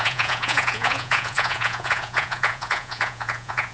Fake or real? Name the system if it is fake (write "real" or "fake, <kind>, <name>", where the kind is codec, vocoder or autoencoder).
fake, vocoder, Vocos